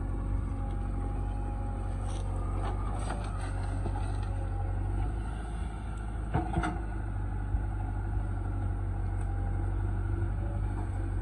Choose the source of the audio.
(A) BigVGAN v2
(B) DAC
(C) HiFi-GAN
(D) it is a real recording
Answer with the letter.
D